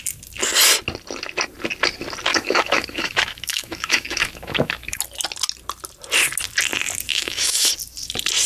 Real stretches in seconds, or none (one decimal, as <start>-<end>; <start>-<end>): 0.0-2.3; 5.0-7.1; 7.7-8.5